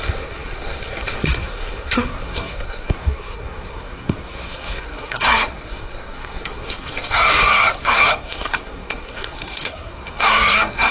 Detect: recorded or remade remade